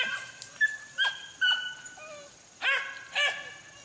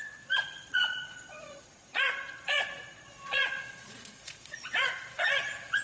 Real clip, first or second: first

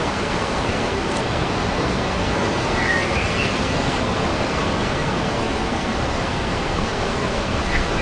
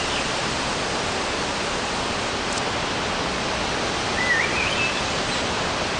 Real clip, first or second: second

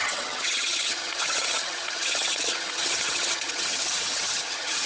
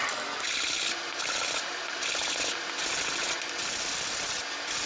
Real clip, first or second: second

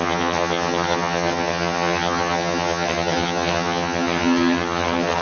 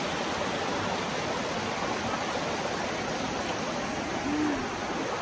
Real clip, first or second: second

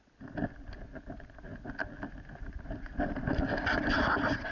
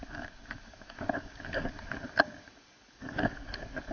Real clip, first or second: first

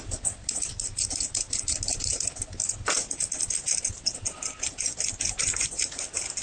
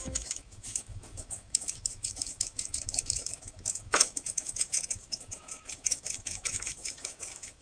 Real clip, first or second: first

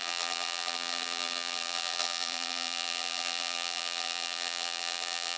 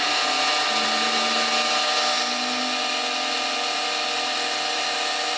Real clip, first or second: second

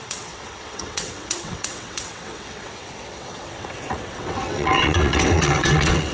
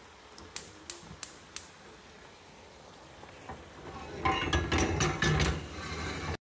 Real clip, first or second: second